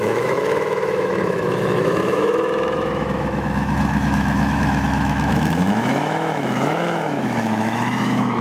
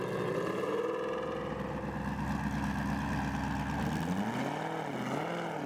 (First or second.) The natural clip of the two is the second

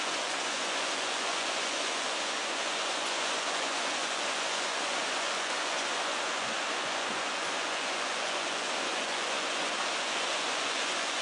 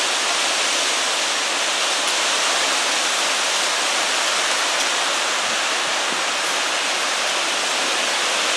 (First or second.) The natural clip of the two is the second